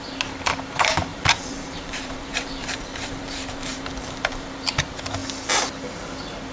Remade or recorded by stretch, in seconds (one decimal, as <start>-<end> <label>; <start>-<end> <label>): 0.0-1.1 recorded; 1.1-4.7 remade; 4.7-6.5 recorded